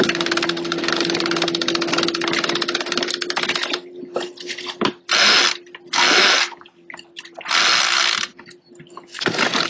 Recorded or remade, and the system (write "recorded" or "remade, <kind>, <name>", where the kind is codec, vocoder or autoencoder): recorded